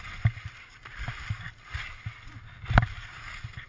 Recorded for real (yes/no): yes